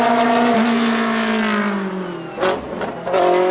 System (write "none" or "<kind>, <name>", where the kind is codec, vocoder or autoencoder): none